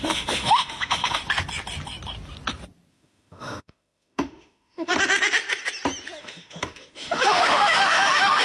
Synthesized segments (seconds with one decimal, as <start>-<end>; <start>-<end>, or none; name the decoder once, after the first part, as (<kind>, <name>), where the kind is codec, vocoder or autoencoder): 0.0-1.2 (autoencoder, DAC-VAE); 2.9-4.9; 6.2-8.4